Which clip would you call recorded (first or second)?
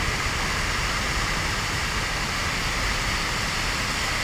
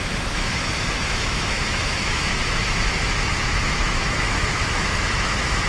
first